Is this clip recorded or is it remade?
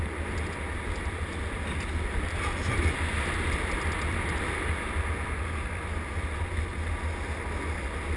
recorded